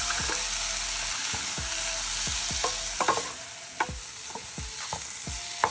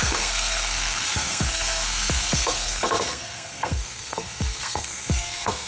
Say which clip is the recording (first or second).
first